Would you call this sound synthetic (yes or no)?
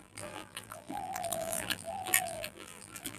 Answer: yes